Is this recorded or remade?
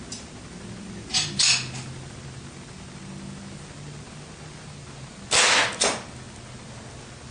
recorded